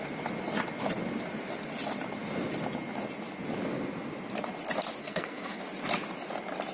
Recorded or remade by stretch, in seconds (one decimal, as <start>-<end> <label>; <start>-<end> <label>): 0.0-5.0 recorded; 5.0-5.6 remade; 5.6-6.7 recorded